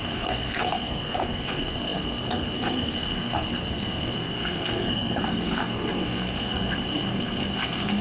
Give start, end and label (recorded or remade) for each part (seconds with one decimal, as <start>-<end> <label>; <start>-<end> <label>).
0.0-8.0 remade